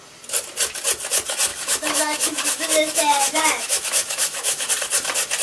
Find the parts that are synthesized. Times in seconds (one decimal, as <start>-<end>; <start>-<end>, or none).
1.5-4.7